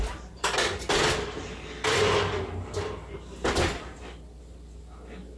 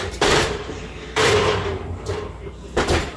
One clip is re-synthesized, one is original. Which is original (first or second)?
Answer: first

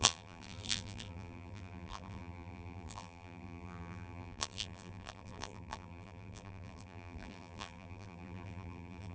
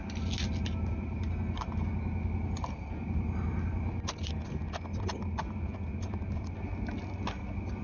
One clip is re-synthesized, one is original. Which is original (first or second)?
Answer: second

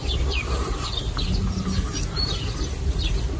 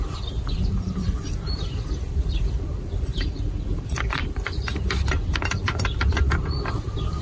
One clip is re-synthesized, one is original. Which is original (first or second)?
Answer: first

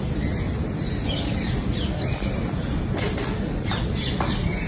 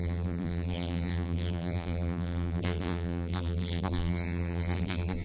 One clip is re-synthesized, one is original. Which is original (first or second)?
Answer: first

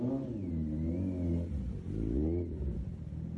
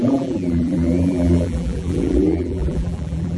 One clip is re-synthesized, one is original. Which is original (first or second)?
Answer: first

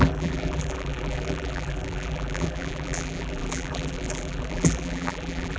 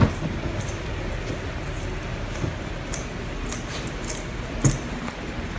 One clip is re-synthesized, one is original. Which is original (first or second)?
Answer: second